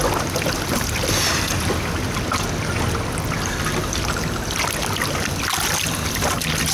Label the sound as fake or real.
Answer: real